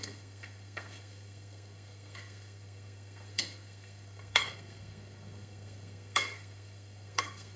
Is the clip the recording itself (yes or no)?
no